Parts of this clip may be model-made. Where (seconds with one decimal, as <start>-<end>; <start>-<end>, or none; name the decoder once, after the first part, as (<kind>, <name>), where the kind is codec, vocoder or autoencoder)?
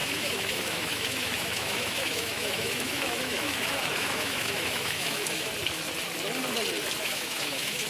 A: 0.0-5.5 (autoencoder, DAC-VAE); 7.0-7.9